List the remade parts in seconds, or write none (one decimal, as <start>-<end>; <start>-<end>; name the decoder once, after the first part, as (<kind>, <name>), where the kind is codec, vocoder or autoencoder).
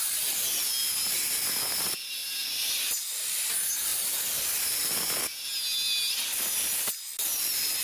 2.2-3.1 (vocoder, BigVGAN v2)